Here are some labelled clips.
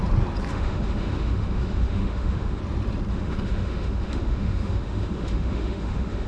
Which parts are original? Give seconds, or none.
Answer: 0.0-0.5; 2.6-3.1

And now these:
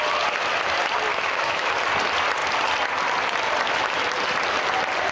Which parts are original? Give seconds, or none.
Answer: 0.0-1.1; 1.7-5.1

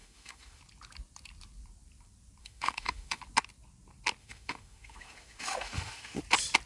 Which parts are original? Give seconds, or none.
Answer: 0.6-2.4; 3.2-4.2; 6.2-6.7

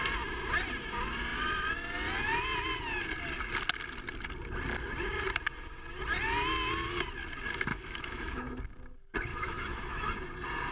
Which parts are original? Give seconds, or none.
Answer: 0.0-7.7; 8.6-9.3; 10.1-10.7

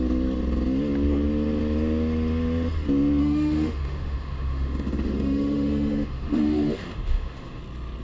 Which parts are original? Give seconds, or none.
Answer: 0.0-3.2; 7.6-8.0